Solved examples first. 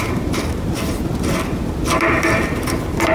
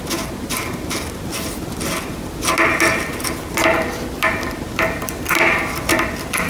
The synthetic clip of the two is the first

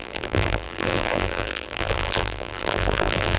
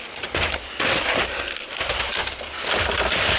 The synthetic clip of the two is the first